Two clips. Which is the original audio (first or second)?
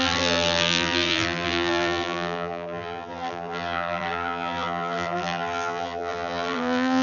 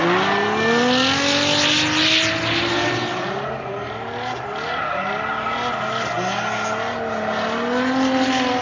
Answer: second